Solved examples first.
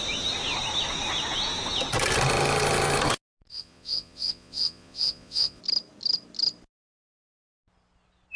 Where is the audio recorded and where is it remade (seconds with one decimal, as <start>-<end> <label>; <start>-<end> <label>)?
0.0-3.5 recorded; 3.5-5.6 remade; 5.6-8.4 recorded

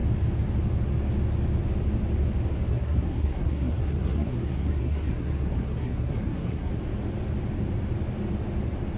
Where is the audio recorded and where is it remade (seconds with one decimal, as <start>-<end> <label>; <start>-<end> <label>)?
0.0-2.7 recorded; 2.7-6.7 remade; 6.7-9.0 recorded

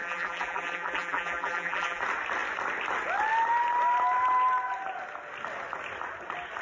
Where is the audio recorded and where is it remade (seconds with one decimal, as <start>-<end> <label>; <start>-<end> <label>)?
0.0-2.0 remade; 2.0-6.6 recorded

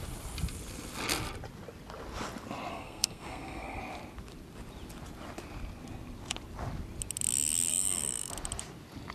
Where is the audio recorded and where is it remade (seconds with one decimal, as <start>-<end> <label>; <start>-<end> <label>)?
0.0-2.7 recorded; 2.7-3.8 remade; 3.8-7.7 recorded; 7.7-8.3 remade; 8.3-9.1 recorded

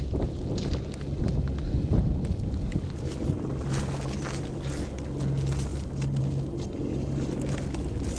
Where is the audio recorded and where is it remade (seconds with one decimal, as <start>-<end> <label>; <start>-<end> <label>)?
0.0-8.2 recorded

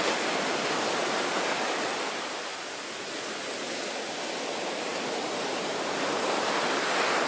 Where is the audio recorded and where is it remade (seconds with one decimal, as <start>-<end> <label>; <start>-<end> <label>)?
0.0-7.3 recorded

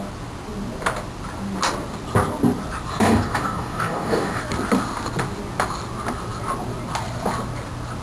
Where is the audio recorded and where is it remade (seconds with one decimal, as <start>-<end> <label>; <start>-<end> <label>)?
0.0-2.9 recorded; 2.9-4.4 remade; 4.4-8.0 recorded

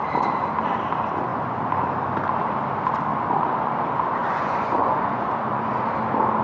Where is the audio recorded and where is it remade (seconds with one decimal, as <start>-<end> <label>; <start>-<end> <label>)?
0.0-1.3 recorded; 1.3-1.8 remade; 1.8-3.1 recorded; 3.1-3.8 remade; 3.8-4.2 recorded; 4.2-5.7 remade; 5.7-6.4 recorded